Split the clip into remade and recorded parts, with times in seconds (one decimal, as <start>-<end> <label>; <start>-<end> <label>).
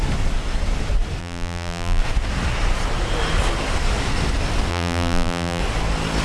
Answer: 0.0-1.2 recorded; 1.2-2.0 remade; 2.0-4.7 recorded; 4.7-5.6 remade; 5.6-6.2 recorded